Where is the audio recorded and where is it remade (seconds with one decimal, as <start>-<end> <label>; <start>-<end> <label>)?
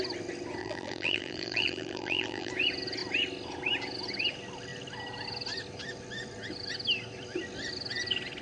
0.0-0.6 recorded; 0.6-2.5 remade; 2.5-8.4 recorded